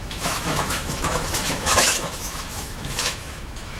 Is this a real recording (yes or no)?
no